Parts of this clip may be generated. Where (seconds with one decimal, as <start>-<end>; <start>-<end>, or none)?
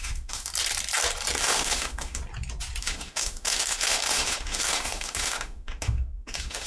0.0-0.5; 1.4-2.2; 2.8-6.7